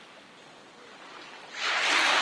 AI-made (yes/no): no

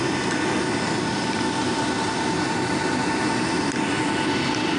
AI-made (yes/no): no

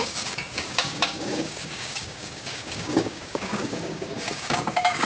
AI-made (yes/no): yes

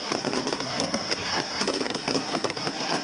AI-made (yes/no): yes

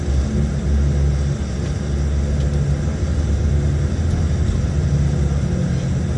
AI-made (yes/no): no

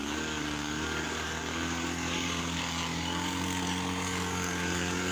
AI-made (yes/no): yes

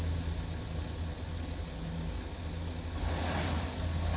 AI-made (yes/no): no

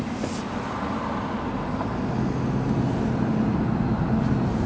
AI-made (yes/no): no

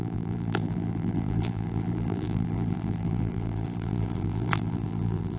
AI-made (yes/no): yes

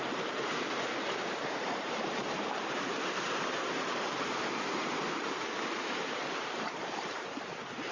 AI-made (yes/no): yes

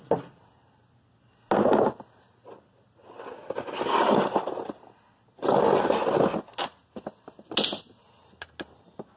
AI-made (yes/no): no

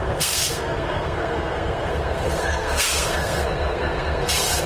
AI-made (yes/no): yes